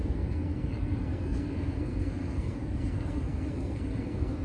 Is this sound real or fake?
fake